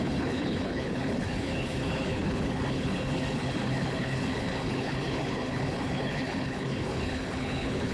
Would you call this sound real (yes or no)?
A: no